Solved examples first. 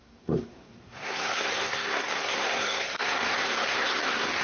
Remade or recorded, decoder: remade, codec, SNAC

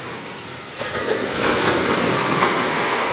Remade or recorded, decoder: remade, codec, SNAC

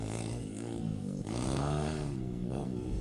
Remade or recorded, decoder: remade, codec, SNAC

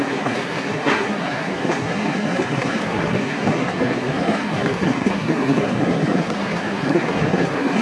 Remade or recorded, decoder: remade, codec, SNAC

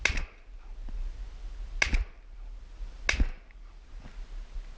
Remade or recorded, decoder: recorded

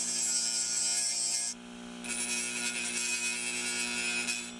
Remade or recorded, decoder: recorded